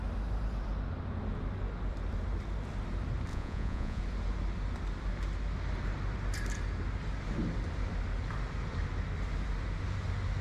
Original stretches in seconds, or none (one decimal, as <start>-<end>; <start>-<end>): 0.0-3.3; 4.0-10.4